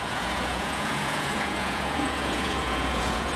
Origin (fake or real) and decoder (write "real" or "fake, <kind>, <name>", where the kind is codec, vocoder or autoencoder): fake, vocoder, Vocos